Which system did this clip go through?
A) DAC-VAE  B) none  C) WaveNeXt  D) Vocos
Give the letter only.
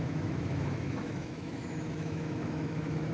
A